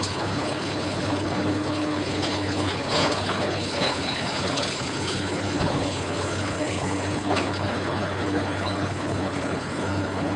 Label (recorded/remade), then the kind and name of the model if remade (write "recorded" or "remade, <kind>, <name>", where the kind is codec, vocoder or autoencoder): remade, codec, HILCodec